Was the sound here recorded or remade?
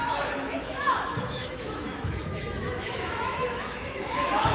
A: remade